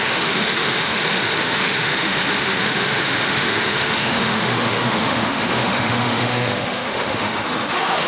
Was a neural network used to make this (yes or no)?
yes